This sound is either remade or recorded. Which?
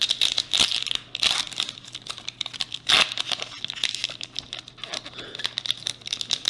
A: recorded